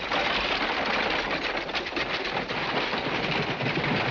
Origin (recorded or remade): recorded